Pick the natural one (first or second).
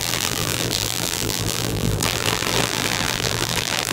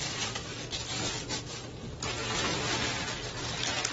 second